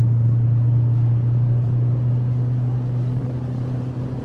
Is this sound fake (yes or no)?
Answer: no